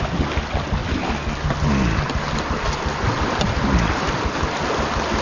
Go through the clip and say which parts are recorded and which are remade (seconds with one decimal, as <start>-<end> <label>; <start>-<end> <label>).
0.0-5.2 recorded